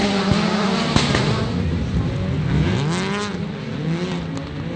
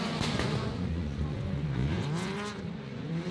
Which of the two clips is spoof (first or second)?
second